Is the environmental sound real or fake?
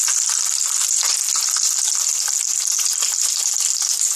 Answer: real